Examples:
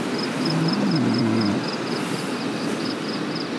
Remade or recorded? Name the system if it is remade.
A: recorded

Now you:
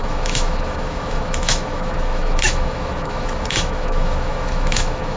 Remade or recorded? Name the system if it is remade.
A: remade, autoencoder, DAC-VAE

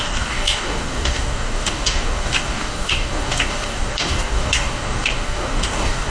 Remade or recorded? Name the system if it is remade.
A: remade, codec, DAC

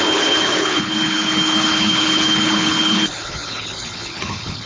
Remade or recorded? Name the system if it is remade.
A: remade, codec, HILCodec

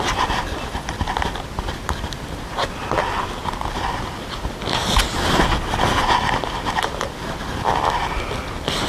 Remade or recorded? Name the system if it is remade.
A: recorded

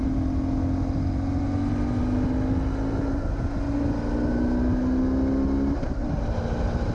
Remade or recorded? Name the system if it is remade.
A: recorded